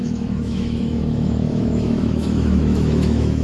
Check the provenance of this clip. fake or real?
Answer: fake